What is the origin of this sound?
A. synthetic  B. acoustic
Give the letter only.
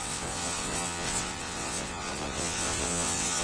A